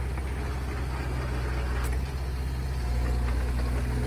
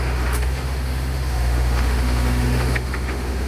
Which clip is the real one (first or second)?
first